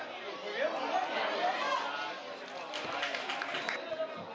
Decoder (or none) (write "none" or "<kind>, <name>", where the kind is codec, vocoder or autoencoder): none